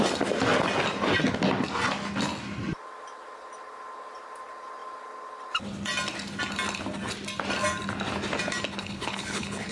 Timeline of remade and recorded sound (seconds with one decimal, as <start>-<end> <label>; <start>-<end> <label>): 0.0-8.8 recorded; 8.8-9.7 remade

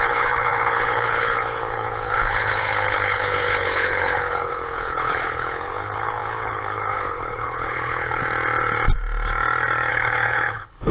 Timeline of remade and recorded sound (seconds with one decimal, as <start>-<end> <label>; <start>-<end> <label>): 0.0-8.2 remade; 8.2-9.9 recorded; 9.9-10.9 remade

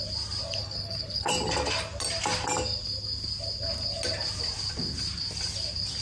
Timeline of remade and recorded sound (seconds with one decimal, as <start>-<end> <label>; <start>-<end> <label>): 0.0-0.6 recorded; 0.6-1.3 remade; 1.3-6.0 recorded

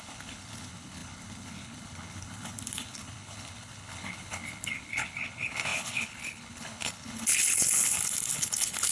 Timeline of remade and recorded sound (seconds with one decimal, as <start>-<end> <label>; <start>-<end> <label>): 0.0-8.9 remade

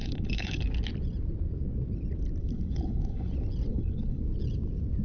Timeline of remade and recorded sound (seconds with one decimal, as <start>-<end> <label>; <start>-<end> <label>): 0.0-0.6 remade; 0.6-2.4 recorded; 2.4-3.3 remade; 3.3-3.7 recorded; 3.7-4.2 remade; 4.2-5.0 recorded

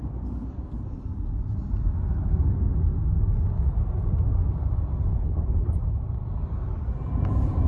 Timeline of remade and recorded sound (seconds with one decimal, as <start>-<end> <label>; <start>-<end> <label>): 0.0-5.1 recorded; 5.1-6.0 remade; 6.0-7.7 recorded